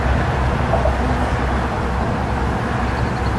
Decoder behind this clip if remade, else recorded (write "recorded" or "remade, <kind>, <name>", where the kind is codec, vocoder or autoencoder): recorded